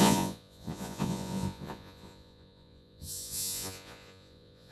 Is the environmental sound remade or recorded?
remade